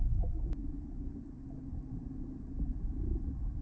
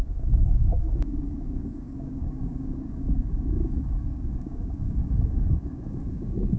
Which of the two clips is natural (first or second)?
first